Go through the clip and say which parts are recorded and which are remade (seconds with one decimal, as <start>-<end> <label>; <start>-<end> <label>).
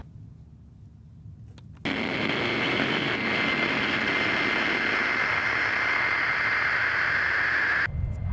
0.0-6.8 recorded; 6.8-7.3 remade; 7.3-8.3 recorded